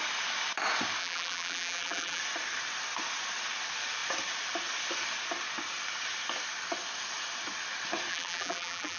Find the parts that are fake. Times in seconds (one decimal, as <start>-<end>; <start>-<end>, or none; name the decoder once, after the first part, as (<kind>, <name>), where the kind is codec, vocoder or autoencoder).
1.0-2.2 (vocoder, BigVGAN v2); 8.1-9.0